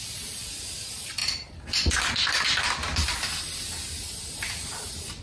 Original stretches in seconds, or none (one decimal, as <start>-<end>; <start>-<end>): 0.0-5.2